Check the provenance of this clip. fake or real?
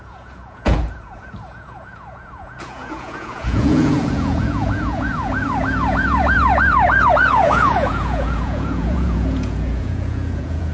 fake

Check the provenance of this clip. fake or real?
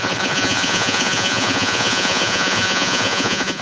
fake